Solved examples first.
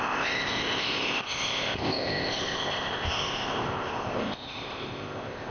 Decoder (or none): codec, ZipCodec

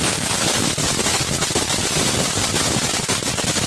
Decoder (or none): none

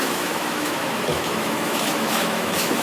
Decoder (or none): autoencoder, DAC-VAE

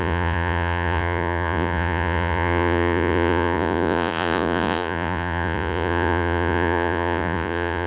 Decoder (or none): vocoder, Vocos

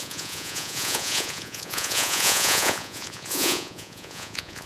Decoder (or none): vocoder, Vocos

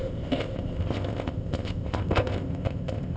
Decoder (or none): codec, ZipCodec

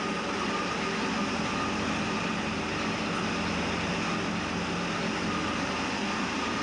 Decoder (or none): none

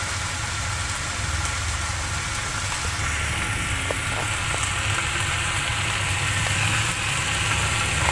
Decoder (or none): none